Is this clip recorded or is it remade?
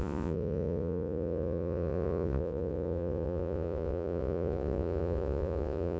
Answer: remade